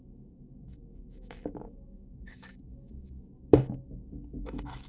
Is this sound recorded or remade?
remade